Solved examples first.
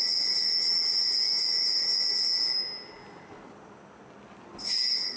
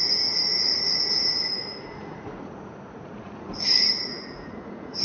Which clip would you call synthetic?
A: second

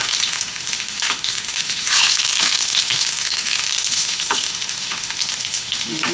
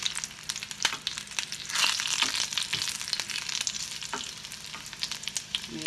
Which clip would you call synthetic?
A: first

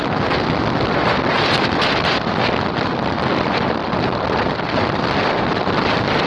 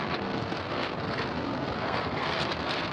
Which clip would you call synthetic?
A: second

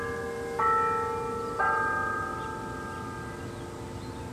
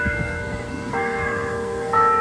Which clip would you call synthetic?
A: second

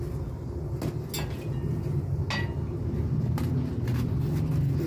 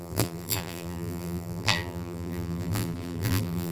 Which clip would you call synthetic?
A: second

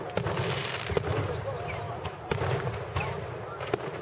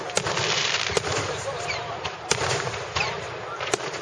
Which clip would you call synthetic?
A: second